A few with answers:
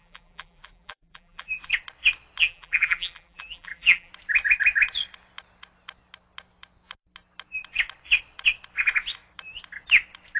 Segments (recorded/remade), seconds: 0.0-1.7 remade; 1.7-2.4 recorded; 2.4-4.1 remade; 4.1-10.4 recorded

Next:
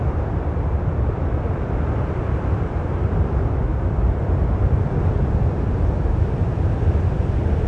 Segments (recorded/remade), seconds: 0.0-3.7 remade; 3.7-4.6 recorded; 4.6-7.7 remade

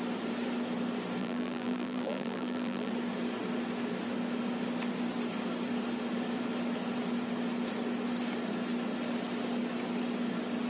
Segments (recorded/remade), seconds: 0.0-1.2 recorded; 1.2-2.9 remade; 2.9-10.7 recorded

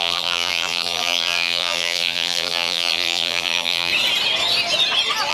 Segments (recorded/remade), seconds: 0.0-3.9 remade; 3.9-5.3 recorded

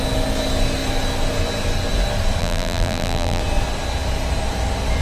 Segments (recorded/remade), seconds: 0.0-2.4 recorded; 2.4-3.4 remade; 3.4-5.0 recorded

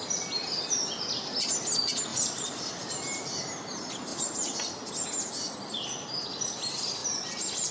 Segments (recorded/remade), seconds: 0.0-2.1 recorded; 2.1-2.7 remade; 2.7-4.1 recorded; 4.1-4.6 remade; 4.6-7.0 recorded; 7.0-7.7 remade

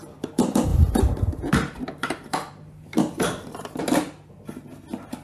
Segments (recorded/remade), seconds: 0.0-0.7 recorded; 0.7-3.8 remade; 3.8-5.2 recorded